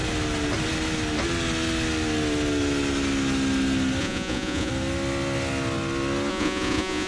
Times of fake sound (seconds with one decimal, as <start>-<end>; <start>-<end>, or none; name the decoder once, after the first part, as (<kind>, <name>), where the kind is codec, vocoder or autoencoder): 4.0-4.7 (vocoder, Vocos); 6.3-7.1